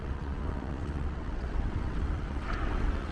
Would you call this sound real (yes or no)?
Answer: no